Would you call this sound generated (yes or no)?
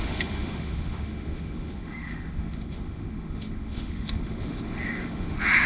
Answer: yes